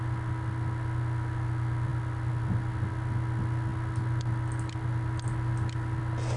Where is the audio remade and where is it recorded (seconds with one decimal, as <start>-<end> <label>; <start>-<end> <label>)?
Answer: 0.0-6.4 recorded